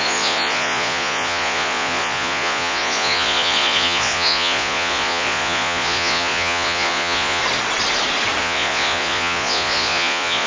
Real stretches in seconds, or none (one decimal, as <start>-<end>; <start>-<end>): 7.4-8.4